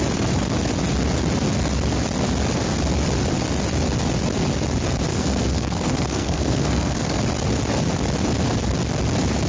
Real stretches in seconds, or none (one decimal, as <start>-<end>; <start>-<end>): 0.0-5.1; 7.2-9.5